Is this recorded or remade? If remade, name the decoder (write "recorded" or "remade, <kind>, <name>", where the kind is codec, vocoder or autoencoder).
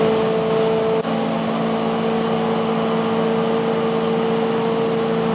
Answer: recorded